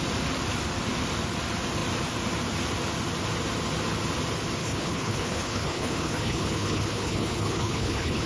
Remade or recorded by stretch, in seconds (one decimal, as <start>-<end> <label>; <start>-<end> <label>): 0.0-4.6 recorded; 4.6-8.3 remade